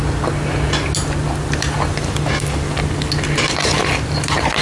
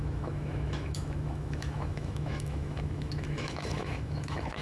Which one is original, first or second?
first